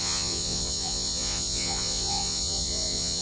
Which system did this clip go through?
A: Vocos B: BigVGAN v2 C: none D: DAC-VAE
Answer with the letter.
A